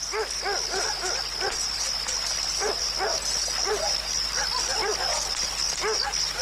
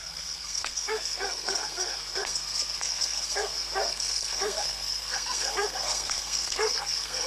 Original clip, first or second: first